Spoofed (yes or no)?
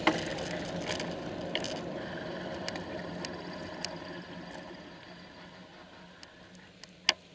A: no